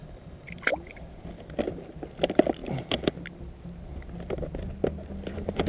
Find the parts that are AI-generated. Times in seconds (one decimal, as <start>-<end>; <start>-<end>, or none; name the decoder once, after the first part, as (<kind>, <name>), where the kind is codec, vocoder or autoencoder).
none